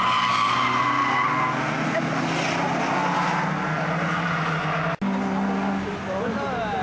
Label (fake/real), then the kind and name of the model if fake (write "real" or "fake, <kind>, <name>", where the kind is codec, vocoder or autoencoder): real